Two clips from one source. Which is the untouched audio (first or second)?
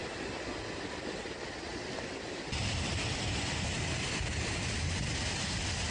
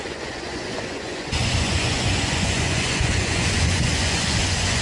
first